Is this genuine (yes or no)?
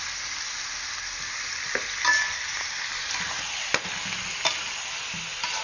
yes